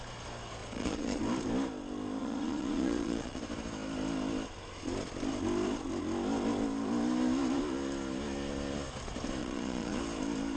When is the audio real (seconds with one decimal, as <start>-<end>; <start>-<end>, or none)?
0.0-0.6; 1.2-2.2; 3.4-9.4; 10.0-10.6